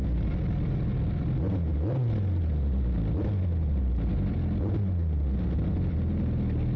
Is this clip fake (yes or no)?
no